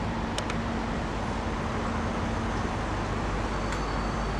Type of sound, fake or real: real